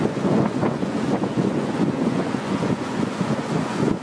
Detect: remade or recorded remade